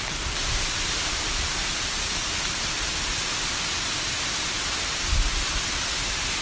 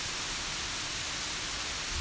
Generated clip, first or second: first